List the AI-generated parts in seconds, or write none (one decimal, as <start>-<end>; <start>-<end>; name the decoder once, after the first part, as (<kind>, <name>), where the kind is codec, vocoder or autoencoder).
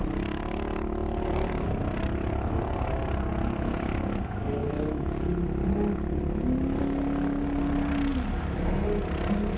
1.0-1.8 (vocoder, BigVGAN v2); 8.1-8.7